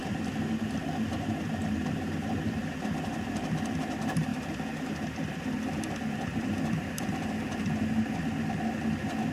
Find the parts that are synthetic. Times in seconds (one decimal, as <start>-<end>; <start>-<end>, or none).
0.0-0.6; 1.6-3.3; 4.3-7.3